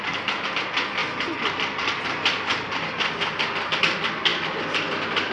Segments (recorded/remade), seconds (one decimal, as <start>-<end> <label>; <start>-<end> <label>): 0.0-4.3 recorded; 4.3-5.3 remade